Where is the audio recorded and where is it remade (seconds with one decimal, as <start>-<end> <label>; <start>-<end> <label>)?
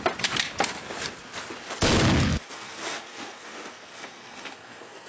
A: 0.0-2.3 recorded; 2.3-5.1 remade